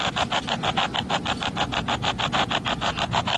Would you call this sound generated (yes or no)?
no